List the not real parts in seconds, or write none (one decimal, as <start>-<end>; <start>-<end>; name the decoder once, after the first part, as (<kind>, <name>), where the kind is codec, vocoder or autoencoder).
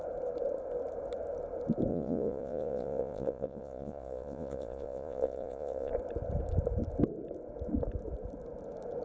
1.9-5.9 (vocoder, Vocos)